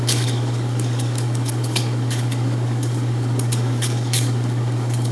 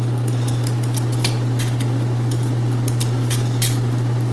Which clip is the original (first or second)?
second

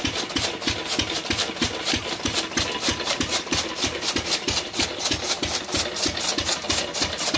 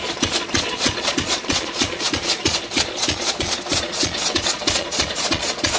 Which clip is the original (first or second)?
first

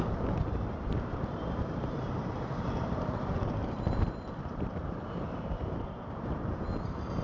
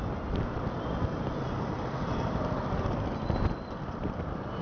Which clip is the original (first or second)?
second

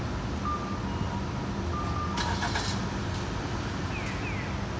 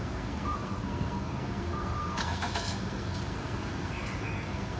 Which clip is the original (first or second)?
first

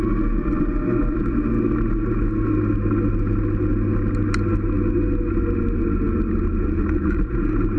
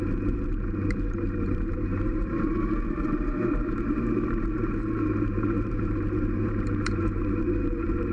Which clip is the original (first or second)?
first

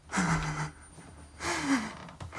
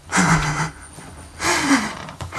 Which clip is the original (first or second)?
first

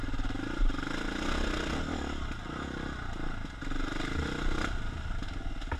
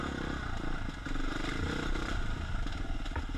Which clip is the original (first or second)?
first